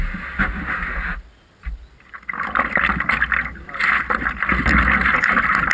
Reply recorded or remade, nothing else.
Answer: recorded